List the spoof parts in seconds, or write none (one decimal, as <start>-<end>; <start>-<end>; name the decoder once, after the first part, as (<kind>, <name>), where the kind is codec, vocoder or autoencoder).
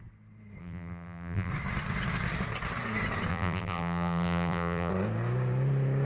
0.6-1.5 (vocoder, BigVGAN v2); 3.3-4.9